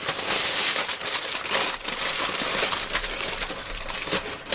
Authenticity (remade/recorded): recorded